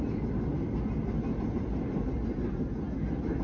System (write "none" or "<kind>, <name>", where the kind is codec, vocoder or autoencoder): none